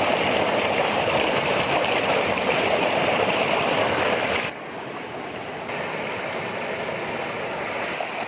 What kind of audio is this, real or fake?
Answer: real